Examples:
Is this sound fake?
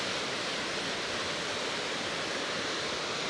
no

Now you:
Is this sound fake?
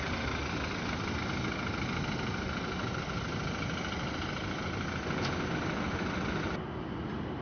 no